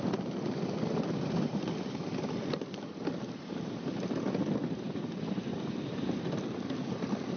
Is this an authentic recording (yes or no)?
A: yes